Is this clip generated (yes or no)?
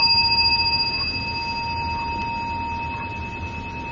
no